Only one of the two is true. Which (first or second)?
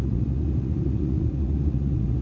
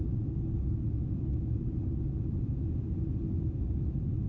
second